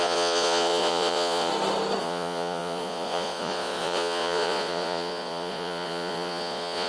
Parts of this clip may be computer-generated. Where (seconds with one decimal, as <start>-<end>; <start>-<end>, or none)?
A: 0.0-1.5; 2.0-6.9